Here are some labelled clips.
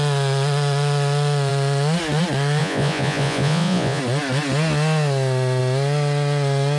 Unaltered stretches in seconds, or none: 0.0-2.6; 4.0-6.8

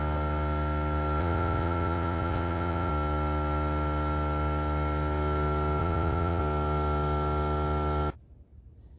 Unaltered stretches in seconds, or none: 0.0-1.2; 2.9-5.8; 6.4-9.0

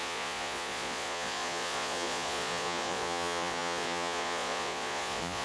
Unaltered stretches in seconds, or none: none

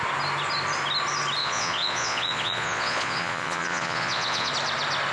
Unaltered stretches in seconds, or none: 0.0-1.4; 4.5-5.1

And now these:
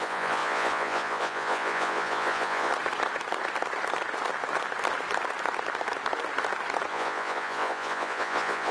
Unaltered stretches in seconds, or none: 2.7-6.9

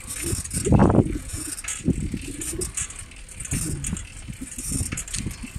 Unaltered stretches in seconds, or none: 0.0-0.8; 1.5-5.6